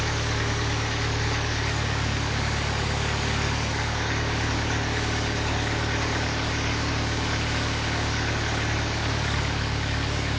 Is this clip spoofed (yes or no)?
yes